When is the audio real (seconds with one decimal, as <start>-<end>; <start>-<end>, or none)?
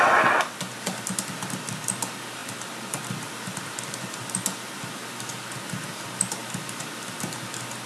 0.0-7.9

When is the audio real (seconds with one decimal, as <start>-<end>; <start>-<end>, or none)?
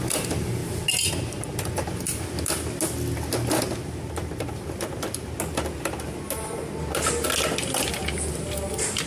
0.0-9.1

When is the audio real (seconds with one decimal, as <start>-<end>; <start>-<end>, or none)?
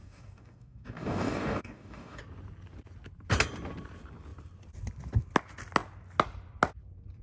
2.2-7.2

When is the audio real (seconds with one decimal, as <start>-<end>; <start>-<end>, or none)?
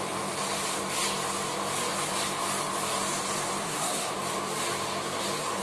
0.0-3.6; 4.1-5.6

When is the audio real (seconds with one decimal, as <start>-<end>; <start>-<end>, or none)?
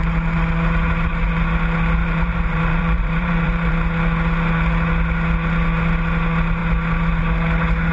0.0-2.0; 3.7-7.9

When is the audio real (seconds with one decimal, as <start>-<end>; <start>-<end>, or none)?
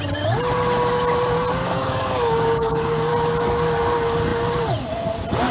0.0-1.6; 3.1-5.5